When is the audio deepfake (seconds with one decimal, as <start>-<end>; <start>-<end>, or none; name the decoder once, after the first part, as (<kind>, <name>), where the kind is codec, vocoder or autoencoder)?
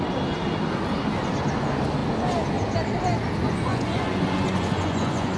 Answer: 3.7-5.4 (vocoder, Vocos)